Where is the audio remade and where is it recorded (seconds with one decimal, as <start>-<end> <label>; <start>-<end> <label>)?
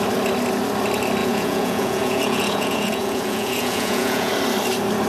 0.0-1.2 recorded; 1.2-4.3 remade; 4.3-5.1 recorded